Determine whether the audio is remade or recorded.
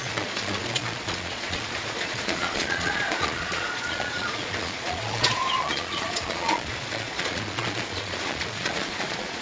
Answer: remade